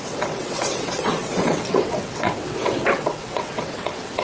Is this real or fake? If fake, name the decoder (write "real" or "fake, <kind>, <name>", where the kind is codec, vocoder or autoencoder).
fake, vocoder, WaveNeXt